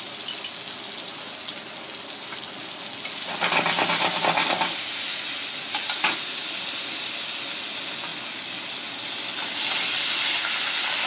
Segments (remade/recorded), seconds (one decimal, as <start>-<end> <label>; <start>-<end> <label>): 0.0-11.1 recorded

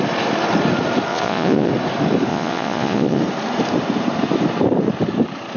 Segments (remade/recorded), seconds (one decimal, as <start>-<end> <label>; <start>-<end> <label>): 0.0-1.1 recorded; 1.1-1.7 remade; 1.7-2.3 recorded; 2.3-3.2 remade; 3.2-5.6 recorded

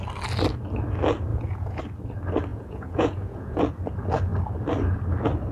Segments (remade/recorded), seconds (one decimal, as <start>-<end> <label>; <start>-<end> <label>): 0.0-1.3 recorded; 1.3-1.8 remade; 1.8-2.5 recorded; 2.5-3.5 remade; 3.5-5.5 recorded

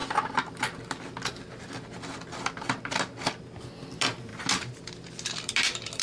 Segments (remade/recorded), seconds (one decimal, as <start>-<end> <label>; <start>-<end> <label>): 0.0-6.0 recorded

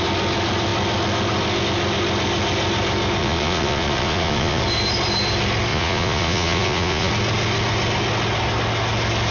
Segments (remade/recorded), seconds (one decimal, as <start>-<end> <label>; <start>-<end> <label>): 0.0-3.2 recorded; 3.2-4.6 remade; 4.6-5.7 recorded; 5.7-7.1 remade; 7.1-9.3 recorded